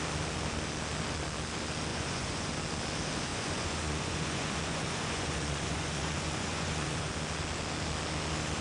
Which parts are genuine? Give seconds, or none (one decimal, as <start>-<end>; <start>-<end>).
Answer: 0.0-1.9; 2.5-3.3; 7.1-8.6